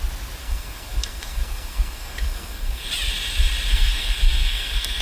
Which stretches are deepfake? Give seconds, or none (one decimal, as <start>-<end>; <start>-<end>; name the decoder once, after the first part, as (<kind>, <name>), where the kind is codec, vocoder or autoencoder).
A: 0.4-2.9 (codec, SNAC); 3.7-5.0